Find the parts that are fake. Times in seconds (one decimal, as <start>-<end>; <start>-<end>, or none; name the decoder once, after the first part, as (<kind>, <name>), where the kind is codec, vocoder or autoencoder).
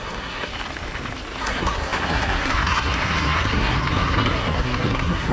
0.0-0.5 (codec, SNAC); 1.4-5.3